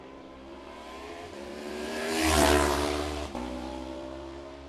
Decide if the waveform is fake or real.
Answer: fake